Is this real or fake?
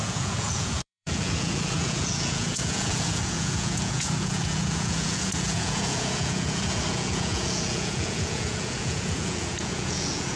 fake